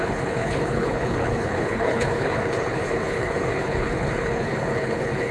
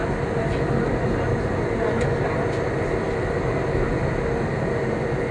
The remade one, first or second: first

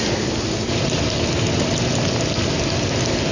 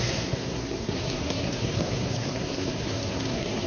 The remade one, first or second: second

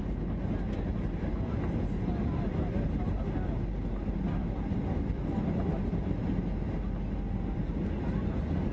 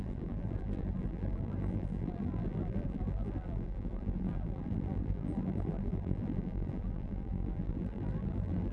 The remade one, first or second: second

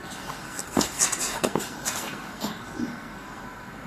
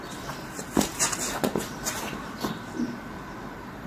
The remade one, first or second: first